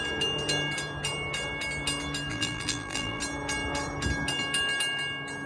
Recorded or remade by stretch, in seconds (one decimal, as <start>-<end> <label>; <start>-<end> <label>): 0.0-2.3 recorded; 2.3-3.2 remade; 3.2-5.5 recorded